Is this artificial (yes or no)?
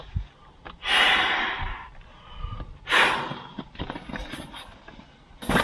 no